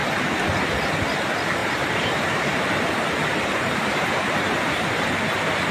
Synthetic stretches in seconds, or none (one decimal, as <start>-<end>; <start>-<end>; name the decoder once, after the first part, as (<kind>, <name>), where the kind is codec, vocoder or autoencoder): 1.6-5.0 (vocoder, BigVGAN v2)